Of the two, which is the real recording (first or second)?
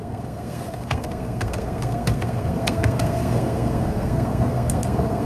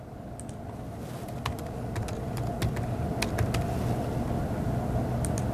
second